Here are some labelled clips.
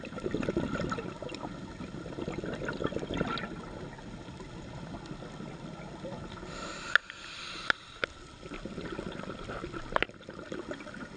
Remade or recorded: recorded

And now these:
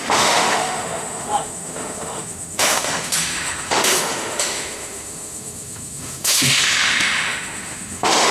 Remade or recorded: remade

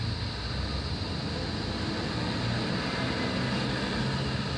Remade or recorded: recorded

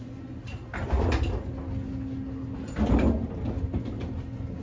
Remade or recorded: recorded